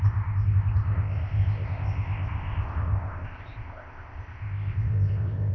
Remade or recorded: remade